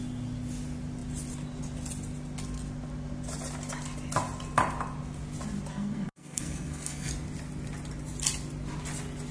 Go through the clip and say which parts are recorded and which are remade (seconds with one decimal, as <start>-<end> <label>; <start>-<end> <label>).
0.0-5.7 recorded; 5.7-7.1 remade; 7.1-9.3 recorded